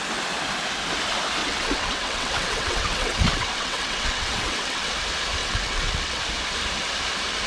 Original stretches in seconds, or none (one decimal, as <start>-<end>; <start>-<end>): 0.0-1.4; 4.9-5.4; 6.2-7.5